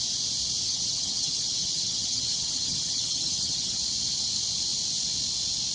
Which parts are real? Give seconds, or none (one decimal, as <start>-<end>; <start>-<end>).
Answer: 0.0-0.7; 3.8-5.7